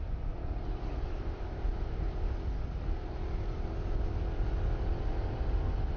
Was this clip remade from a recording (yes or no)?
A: no